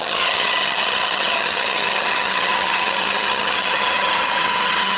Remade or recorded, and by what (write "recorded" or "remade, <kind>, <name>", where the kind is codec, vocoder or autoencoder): remade, vocoder, HiFi-GAN